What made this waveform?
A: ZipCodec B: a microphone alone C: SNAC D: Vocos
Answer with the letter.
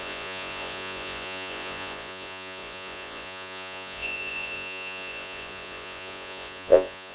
D